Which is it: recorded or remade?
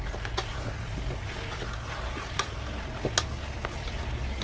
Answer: recorded